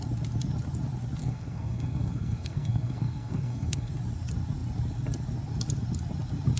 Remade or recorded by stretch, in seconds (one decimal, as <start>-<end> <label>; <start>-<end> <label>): 0.0-1.2 recorded; 1.2-3.9 remade; 3.9-6.6 recorded